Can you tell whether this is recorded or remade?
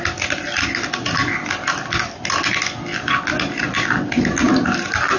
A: recorded